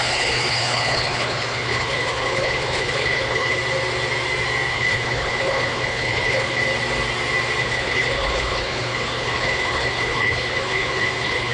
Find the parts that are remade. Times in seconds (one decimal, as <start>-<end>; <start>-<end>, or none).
0.0-3.6; 4.7-6.6; 7.6-11.5